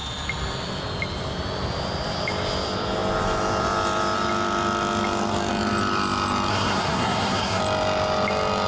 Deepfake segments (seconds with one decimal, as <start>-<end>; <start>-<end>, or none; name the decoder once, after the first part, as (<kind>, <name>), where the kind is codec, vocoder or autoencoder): 6.5-7.6 (codec, SNAC)